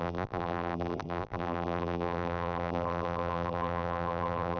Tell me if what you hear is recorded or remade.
remade